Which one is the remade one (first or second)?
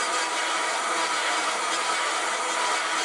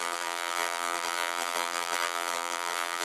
second